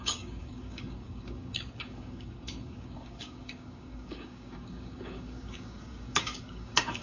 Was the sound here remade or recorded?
remade